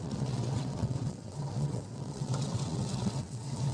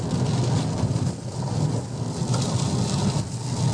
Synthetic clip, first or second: first